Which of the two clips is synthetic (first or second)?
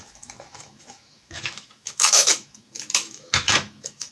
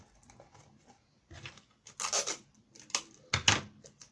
first